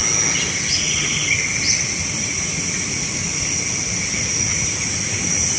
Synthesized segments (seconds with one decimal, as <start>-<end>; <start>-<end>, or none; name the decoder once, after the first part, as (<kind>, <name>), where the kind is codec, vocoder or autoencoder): 0.7-1.2 (vocoder, Vocos); 1.8-3.3; 4.1-5.6